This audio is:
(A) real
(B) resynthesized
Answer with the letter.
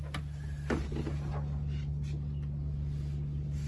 A